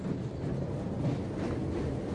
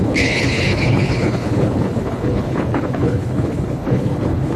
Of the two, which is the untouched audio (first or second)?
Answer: first